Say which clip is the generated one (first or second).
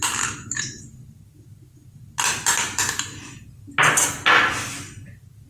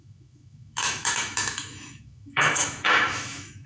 second